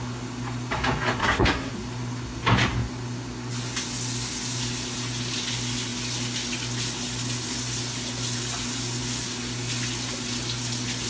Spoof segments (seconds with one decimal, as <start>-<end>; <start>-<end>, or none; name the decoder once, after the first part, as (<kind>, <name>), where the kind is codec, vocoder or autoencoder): 1.2-1.7 (codec, SNAC)